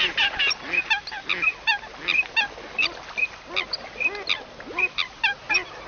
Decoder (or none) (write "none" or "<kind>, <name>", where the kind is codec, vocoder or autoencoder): none